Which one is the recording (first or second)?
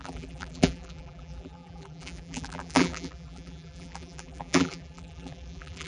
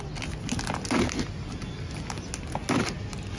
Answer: second